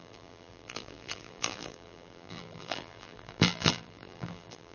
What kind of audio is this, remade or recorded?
remade